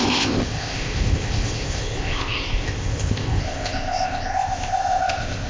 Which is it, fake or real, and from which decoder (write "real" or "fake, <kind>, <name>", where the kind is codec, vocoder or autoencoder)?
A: fake, codec, ZipCodec